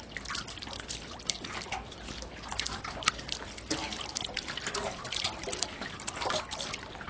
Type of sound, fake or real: real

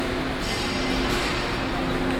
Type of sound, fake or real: real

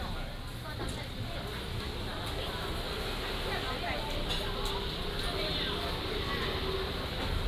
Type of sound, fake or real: real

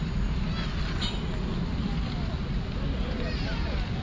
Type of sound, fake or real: real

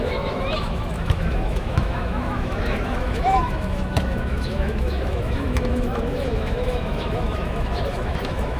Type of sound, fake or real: fake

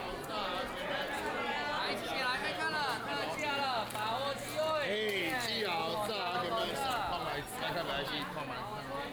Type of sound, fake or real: real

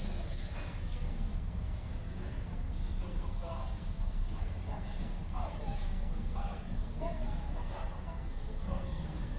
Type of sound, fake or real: fake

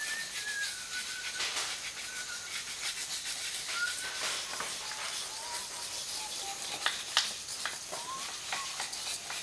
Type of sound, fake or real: real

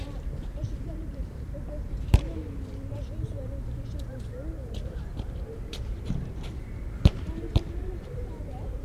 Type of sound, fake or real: fake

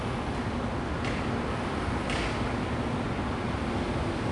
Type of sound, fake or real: real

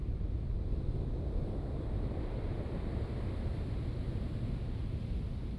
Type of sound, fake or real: real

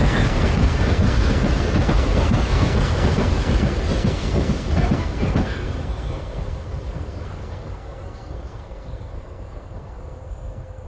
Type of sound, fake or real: fake